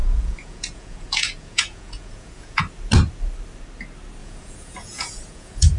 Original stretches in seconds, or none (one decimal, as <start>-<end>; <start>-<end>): 2.6-4.2